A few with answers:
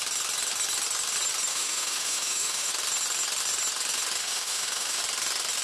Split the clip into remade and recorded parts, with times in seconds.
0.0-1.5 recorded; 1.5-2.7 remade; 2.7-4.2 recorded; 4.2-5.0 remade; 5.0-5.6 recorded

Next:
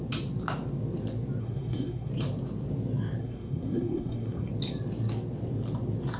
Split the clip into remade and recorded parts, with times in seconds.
0.0-1.4 recorded; 1.4-2.1 remade; 2.1-3.2 recorded; 3.2-4.5 remade; 4.5-6.2 recorded

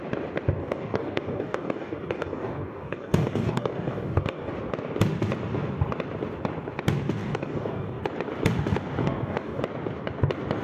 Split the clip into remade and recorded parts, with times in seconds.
0.0-0.6 recorded; 0.6-4.5 remade; 4.5-7.2 recorded; 7.2-8.0 remade; 8.0-9.0 recorded; 9.0-9.6 remade; 9.6-10.6 recorded